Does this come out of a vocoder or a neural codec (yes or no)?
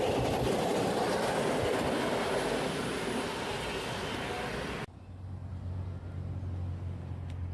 no